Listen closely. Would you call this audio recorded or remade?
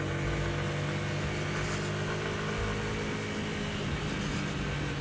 recorded